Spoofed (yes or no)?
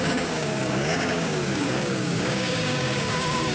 yes